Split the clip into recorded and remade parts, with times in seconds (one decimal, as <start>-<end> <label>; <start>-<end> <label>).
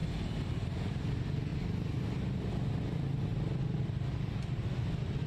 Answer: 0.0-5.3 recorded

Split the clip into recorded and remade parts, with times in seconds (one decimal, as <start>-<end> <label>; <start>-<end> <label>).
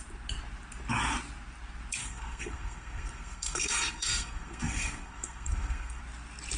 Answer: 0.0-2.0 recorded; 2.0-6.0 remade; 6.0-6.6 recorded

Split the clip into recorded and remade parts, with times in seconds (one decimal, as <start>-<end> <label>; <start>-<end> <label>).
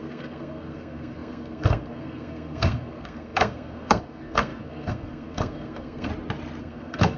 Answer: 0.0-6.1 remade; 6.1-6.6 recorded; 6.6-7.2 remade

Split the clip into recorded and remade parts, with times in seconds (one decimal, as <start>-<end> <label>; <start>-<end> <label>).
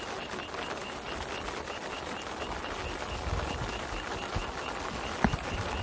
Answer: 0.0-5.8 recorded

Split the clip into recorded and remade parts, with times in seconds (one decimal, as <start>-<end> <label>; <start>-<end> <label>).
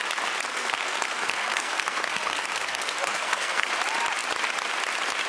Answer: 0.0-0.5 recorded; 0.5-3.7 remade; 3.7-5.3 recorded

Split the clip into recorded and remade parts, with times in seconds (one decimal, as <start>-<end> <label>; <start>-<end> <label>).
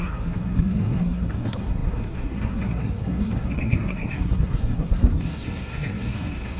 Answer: 0.0-6.6 remade